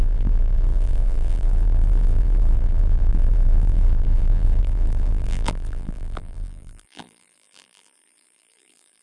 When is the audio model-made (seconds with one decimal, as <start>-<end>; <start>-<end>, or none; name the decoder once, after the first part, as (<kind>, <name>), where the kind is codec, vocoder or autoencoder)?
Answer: 0.0-9.0 (vocoder, BigVGAN v2)